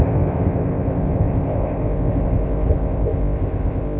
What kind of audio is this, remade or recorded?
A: remade